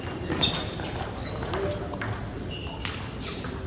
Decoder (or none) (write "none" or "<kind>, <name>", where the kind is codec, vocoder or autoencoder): none